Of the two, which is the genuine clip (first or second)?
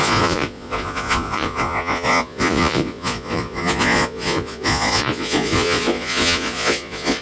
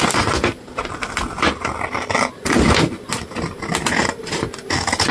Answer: second